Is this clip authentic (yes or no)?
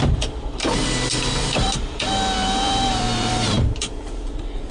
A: no